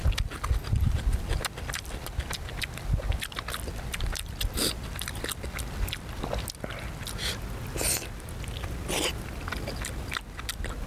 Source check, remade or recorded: recorded